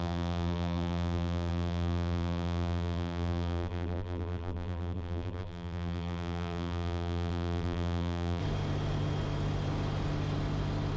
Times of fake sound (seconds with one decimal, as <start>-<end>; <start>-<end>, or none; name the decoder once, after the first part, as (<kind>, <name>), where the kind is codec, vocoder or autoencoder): 0.0-8.4 (vocoder, BigVGAN v2)